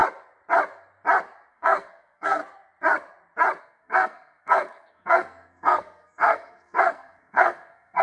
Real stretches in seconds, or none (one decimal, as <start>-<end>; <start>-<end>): 0.0-1.5; 2.4-3.6